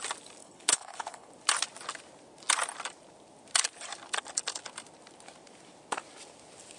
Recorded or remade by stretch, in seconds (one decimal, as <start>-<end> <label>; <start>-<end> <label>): 0.0-0.4 recorded; 0.4-1.3 remade; 1.3-6.8 recorded